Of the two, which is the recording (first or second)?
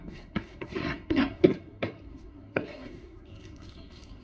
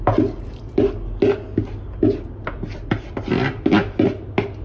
second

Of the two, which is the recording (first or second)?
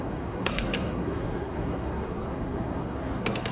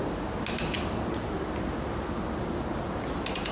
second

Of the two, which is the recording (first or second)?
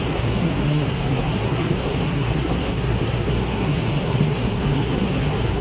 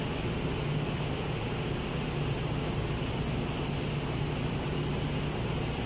second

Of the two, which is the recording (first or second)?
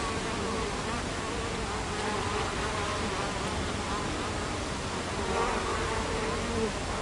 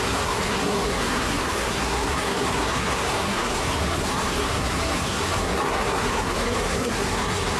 first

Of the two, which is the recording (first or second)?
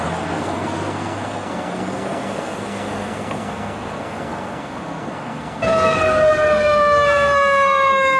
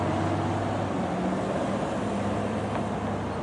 second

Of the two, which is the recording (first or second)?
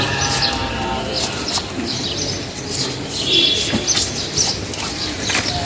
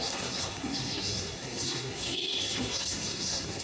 first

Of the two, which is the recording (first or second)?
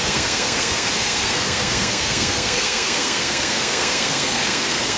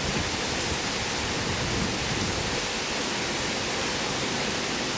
second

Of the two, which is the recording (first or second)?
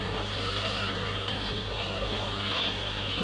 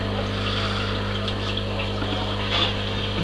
second